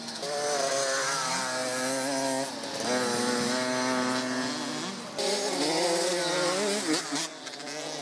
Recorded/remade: recorded